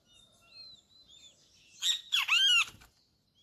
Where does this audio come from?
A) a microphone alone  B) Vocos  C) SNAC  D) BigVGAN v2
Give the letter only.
A